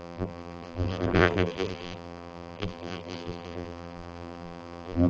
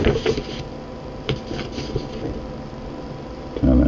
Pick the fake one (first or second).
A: first